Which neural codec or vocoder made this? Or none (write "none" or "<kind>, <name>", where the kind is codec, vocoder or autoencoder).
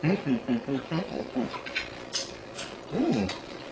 vocoder, Vocos